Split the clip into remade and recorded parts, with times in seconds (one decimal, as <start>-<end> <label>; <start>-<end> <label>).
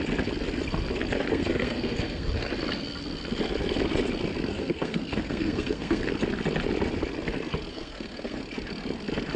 0.0-1.3 recorded; 1.3-2.3 remade; 2.3-4.5 recorded; 4.5-6.0 remade; 6.0-7.7 recorded; 7.7-8.4 remade; 8.4-9.4 recorded